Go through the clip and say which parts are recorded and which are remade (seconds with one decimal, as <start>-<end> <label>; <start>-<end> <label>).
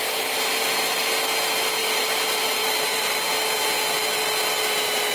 0.0-1.8 recorded; 1.8-3.2 remade; 3.2-5.1 recorded